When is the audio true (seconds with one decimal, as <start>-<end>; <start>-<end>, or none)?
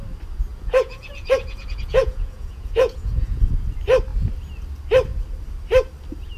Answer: 0.0-0.5; 3.4-6.4